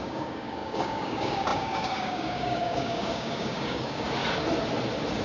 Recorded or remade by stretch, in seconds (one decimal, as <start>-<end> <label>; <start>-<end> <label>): 0.0-4.2 remade; 4.2-5.2 recorded